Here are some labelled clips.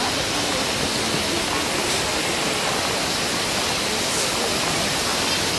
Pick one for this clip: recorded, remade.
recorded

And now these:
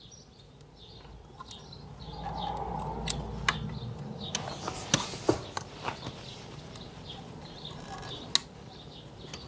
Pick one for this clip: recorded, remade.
recorded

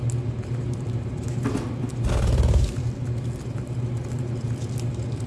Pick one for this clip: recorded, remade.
recorded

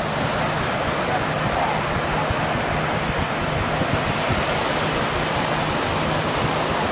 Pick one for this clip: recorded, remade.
recorded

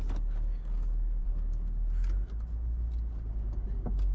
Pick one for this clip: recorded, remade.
recorded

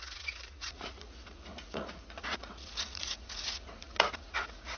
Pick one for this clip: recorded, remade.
remade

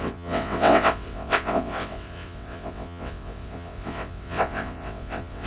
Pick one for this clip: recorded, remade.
remade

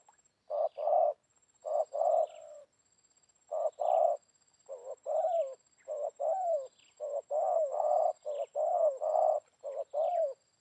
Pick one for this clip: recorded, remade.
remade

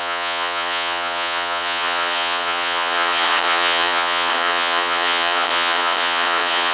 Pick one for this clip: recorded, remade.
remade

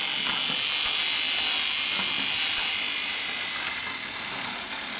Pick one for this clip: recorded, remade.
recorded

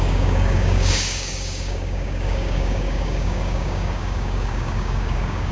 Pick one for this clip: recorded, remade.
remade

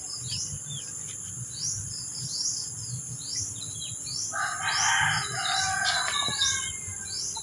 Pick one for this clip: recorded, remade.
recorded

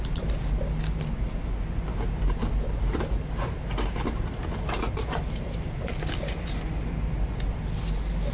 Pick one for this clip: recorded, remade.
recorded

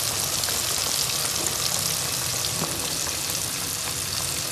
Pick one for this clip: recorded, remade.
recorded